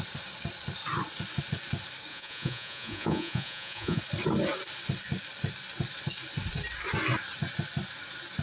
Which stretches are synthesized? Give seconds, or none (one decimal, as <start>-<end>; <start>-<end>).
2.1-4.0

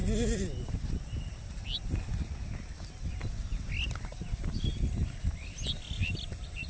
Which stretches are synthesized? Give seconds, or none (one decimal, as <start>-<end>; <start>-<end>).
none

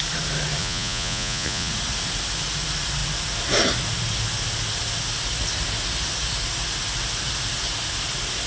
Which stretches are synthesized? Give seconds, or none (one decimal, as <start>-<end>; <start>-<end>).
0.6-1.7